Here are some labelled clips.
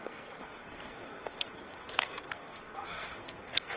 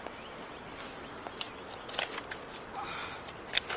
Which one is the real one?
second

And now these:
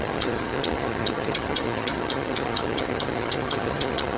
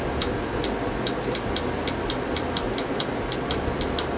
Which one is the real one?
second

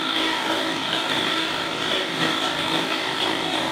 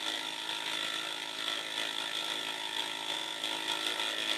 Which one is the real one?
second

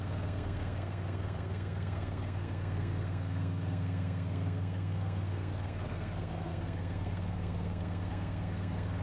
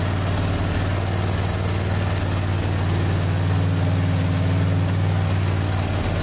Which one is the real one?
second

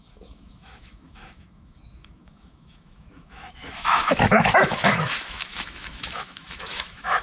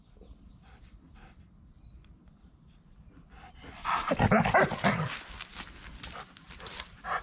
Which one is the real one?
second